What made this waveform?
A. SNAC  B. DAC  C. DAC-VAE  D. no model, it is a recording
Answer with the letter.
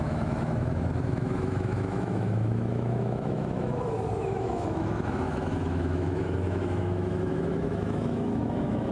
C